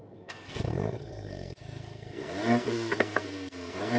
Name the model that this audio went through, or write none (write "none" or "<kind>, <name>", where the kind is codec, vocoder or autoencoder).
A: codec, SNAC